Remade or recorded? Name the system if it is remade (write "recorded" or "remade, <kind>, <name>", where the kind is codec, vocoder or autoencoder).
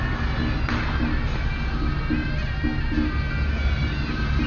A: recorded